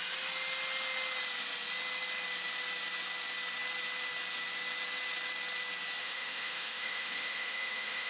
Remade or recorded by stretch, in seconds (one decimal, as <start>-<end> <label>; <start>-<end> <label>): 0.0-6.0 recorded; 6.0-8.1 remade

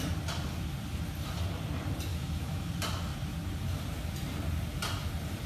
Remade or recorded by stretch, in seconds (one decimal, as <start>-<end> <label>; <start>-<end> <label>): 0.0-2.1 recorded; 2.1-2.7 remade; 2.7-5.5 recorded

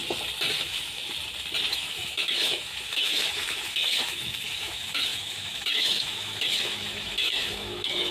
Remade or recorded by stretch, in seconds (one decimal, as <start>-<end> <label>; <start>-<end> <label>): 0.0-0.6 recorded; 0.6-1.0 remade; 1.0-1.7 recorded; 1.7-8.1 remade

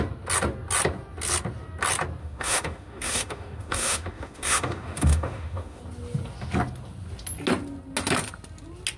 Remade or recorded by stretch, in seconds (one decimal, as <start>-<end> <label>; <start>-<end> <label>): 0.0-2.2 recorded; 2.2-5.8 remade; 5.8-9.0 recorded

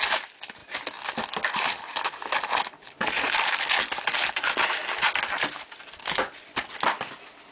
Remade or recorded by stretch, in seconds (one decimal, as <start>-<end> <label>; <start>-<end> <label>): 0.0-7.5 recorded

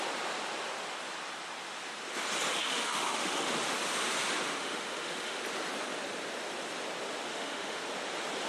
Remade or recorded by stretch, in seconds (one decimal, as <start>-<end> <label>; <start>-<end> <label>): 0.0-2.5 recorded; 2.5-3.5 remade; 3.5-4.6 recorded; 4.6-5.4 remade; 5.4-7.3 recorded; 7.3-7.8 remade; 7.8-8.5 recorded

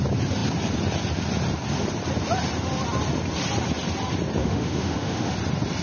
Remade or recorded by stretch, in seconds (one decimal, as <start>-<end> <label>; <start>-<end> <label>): 0.0-4.4 recorded; 4.4-5.3 remade; 5.3-5.8 recorded